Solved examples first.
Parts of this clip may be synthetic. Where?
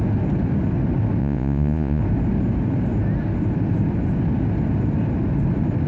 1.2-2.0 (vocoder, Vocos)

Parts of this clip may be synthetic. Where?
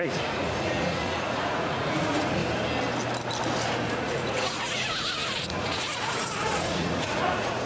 0.0-2.4 (vocoder, Vocos); 3.9-7.7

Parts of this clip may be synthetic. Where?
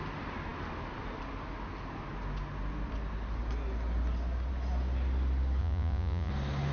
5.6-6.3 (vocoder, Vocos)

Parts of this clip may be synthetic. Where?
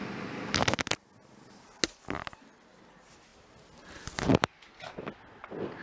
none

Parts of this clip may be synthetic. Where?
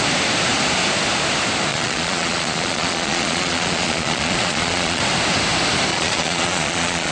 1.7-5.0 (vocoder, Vocos); 5.9-7.1